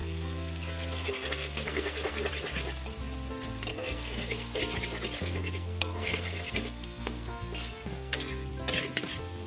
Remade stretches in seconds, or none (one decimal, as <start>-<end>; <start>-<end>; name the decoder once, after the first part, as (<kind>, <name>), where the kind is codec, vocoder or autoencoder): 0.0-2.3 (codec, SNAC); 3.7-4.6; 5.2-8.5